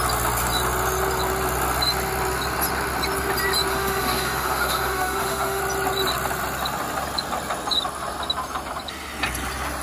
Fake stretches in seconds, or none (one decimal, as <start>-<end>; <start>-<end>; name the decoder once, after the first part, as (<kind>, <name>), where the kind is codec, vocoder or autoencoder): 3.7-5.6 (autoencoder, DAC-VAE)